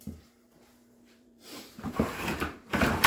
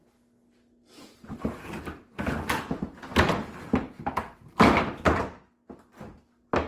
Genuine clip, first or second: second